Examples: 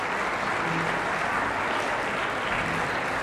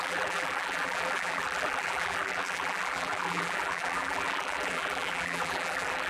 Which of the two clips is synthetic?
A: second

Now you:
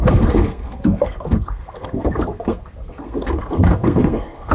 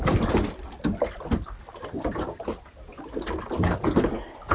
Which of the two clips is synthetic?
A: first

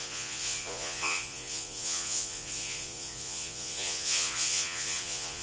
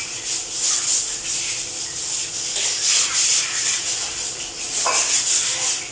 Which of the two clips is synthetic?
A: first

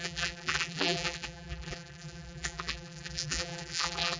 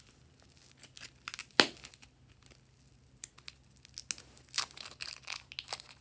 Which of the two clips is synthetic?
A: first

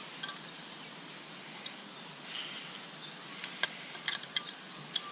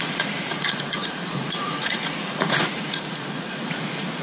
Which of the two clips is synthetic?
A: second